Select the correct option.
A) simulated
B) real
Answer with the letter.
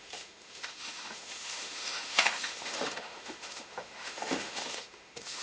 A